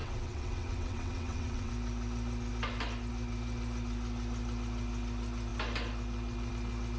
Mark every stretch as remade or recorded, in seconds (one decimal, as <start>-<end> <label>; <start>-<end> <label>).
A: 0.0-1.7 remade; 1.7-7.0 recorded